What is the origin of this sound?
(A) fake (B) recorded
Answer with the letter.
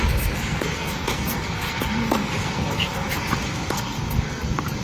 A